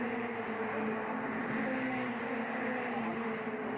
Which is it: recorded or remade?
recorded